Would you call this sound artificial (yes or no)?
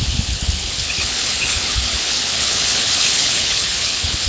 yes